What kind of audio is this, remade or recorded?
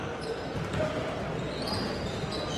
recorded